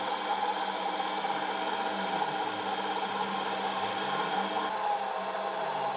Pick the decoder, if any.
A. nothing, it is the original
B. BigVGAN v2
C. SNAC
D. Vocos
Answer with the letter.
A